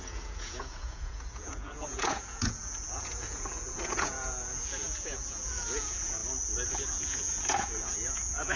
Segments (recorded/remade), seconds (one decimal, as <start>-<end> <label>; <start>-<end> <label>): 0.0-6.2 remade; 6.2-6.7 recorded; 6.7-8.6 remade